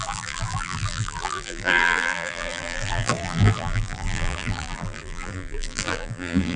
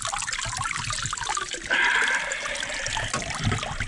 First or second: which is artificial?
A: first